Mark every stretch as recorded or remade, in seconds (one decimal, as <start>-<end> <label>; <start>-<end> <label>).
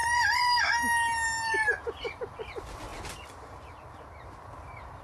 0.0-1.5 recorded; 1.5-2.5 remade; 2.5-5.0 recorded